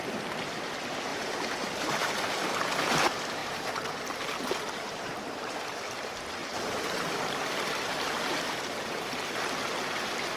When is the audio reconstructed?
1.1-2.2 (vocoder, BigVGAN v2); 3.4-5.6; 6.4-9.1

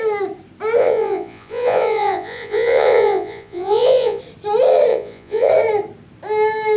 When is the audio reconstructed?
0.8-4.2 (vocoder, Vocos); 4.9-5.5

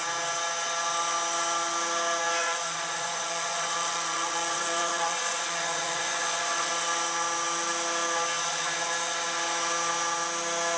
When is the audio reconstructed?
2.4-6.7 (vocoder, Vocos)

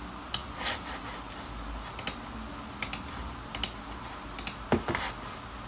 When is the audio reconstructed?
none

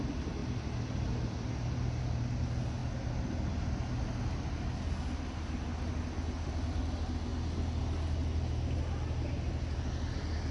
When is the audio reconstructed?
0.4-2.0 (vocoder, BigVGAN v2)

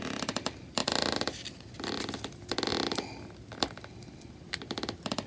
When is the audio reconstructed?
none